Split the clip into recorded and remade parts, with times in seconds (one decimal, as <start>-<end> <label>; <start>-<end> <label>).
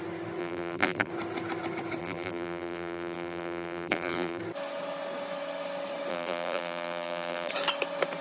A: 0.0-0.4 recorded; 0.4-1.1 remade; 1.1-2.0 recorded; 2.0-4.4 remade; 4.4-6.1 recorded; 6.1-7.5 remade; 7.5-8.2 recorded